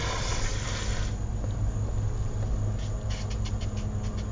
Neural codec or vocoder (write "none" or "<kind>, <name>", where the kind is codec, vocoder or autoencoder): none